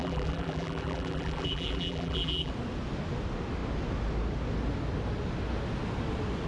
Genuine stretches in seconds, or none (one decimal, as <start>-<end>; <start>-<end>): 2.5-6.5

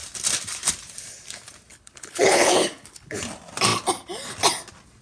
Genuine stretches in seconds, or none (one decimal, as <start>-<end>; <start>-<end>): 0.0-1.7; 3.2-5.0

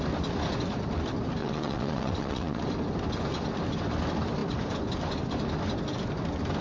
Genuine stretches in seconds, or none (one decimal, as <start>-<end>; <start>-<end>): 0.0-1.4; 2.6-6.6

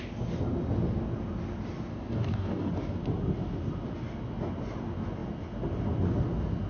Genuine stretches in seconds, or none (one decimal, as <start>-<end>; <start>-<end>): 0.0-1.9; 2.7-6.7